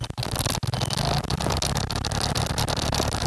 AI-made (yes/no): no